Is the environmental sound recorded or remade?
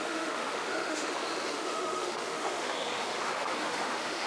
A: remade